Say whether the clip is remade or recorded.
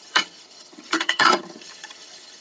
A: remade